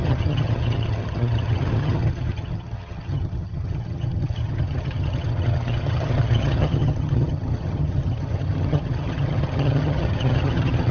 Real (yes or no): no